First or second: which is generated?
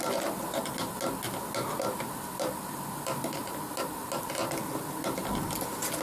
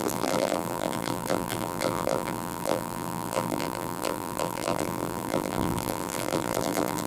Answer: second